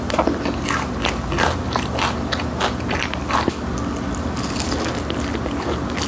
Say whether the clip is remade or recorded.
recorded